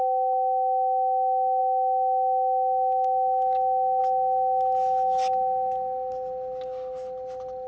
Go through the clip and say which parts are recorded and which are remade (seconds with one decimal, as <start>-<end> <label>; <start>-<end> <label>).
0.0-7.7 recorded

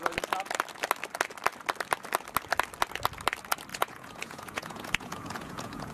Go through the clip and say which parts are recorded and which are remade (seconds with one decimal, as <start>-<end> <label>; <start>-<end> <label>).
0.0-3.7 recorded; 3.7-5.9 remade

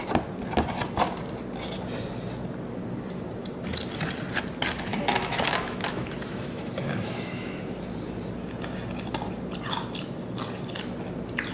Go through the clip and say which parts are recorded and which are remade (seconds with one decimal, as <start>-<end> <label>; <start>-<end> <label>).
0.0-4.9 recorded; 4.9-7.6 remade; 7.6-11.5 recorded

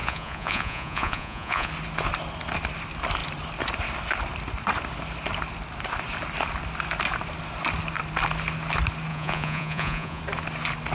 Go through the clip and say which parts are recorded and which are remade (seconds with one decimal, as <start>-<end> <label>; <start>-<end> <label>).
0.0-1.7 remade; 1.7-9.1 recorded; 9.1-10.2 remade; 10.2-10.9 recorded